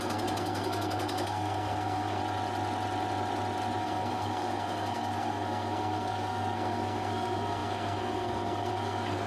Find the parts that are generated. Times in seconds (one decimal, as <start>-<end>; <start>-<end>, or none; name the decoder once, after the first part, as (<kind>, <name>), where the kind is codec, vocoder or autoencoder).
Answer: 0.0-2.2 (codec, SNAC); 3.8-9.3